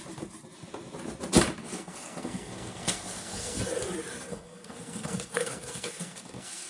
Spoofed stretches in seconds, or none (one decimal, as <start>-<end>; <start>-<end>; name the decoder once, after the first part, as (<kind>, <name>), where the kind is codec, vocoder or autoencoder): 1.6-3.6 (codec, SNAC); 4.3-6.7